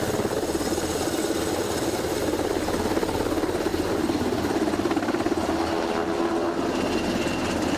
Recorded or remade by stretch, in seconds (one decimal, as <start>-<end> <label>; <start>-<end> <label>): 0.0-7.8 recorded